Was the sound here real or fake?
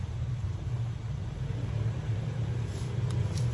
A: fake